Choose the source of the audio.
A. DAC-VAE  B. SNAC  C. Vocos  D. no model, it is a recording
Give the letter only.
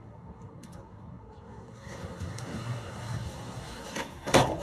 B